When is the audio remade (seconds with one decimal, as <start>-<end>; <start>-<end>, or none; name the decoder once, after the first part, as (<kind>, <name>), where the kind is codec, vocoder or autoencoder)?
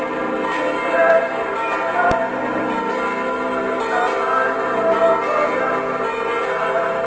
none